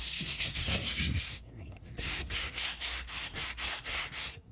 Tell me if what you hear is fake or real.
fake